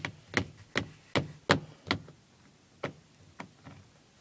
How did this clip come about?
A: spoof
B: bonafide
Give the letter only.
B